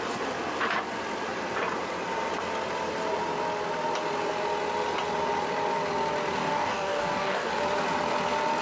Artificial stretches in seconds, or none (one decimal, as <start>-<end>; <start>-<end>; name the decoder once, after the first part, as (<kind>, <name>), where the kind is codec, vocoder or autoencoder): 6.4-7.5 (codec, DAC)